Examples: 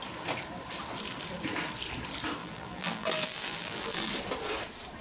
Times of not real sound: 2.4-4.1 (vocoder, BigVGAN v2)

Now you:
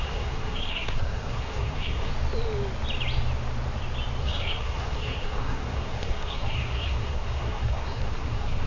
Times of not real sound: 0.0-2.1 (codec, SNAC); 4.2-8.7

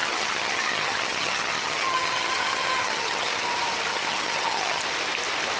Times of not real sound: 0.0-3.4 (vocoder, HiFi-GAN); 3.9-4.8

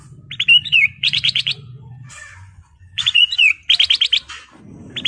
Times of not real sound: 0.6-3.5 (vocoder, Vocos)